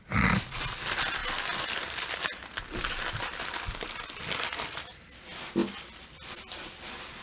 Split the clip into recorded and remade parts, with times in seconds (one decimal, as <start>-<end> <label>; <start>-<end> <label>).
0.0-7.2 recorded